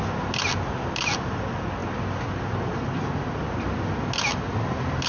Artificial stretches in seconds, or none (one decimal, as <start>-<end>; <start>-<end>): none